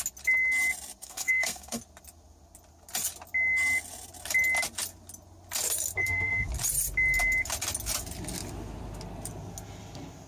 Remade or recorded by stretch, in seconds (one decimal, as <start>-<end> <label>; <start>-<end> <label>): 0.0-1.0 recorded; 1.0-1.8 remade; 1.8-6.0 recorded; 6.0-6.5 remade; 6.5-10.3 recorded